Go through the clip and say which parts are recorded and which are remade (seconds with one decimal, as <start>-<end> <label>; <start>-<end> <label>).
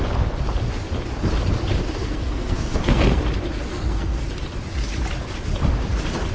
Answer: 0.0-2.0 recorded; 2.0-3.2 remade; 3.2-3.7 recorded; 3.7-4.2 remade; 4.2-6.3 recorded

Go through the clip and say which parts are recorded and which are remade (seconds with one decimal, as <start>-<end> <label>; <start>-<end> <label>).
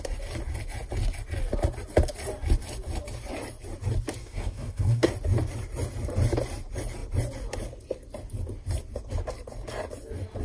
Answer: 0.0-4.2 recorded; 4.2-5.1 remade; 5.1-10.4 recorded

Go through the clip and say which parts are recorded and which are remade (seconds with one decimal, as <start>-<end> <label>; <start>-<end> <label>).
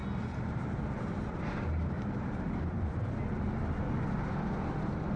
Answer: 0.0-3.1 remade; 3.1-5.2 recorded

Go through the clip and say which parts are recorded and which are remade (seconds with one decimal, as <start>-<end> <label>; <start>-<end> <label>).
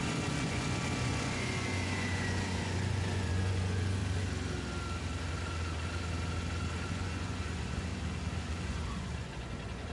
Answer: 0.0-4.0 remade; 4.0-6.9 recorded; 6.9-7.9 remade; 7.9-8.4 recorded; 8.4-9.9 remade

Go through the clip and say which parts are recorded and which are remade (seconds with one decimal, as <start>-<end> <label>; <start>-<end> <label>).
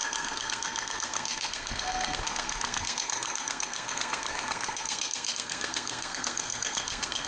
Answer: 0.0-7.3 remade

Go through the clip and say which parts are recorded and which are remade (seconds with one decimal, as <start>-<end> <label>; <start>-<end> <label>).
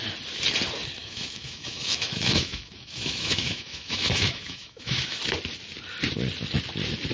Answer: 0.0-1.0 recorded; 1.0-5.2 remade; 5.2-7.1 recorded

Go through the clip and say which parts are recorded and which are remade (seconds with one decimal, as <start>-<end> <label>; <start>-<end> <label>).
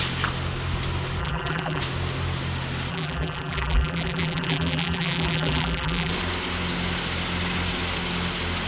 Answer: 0.0-1.2 recorded; 1.2-1.8 remade; 1.8-2.9 recorded; 2.9-6.1 remade; 6.1-8.7 recorded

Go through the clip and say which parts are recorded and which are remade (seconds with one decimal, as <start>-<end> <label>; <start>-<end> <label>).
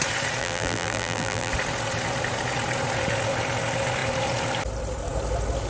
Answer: 0.0-0.4 recorded; 0.4-1.5 remade; 1.5-5.7 recorded